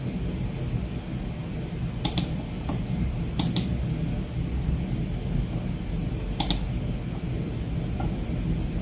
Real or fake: real